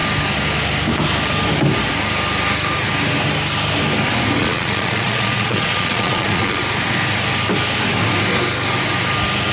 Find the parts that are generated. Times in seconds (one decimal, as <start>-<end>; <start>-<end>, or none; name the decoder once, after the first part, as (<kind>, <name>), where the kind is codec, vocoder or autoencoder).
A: 4.4-6.6 (vocoder, Vocos)